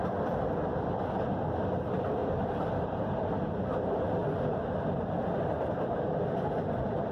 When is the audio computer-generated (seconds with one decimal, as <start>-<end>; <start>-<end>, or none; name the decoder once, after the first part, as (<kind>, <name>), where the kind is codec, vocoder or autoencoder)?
2.2-3.3 (vocoder, BigVGAN v2)